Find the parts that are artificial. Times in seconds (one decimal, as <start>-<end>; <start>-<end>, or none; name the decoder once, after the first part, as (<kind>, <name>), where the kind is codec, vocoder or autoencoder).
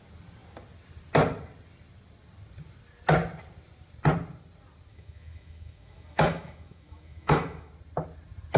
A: 4.9-7.7 (autoencoder, DAC-VAE)